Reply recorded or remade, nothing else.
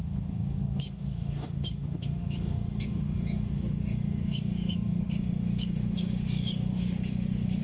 remade